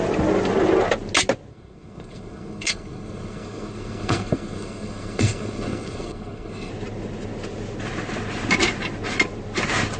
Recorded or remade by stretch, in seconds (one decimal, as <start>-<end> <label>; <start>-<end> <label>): 0.0-1.5 recorded; 1.5-6.7 remade; 6.7-10.0 recorded